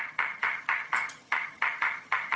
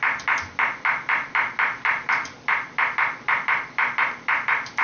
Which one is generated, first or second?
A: first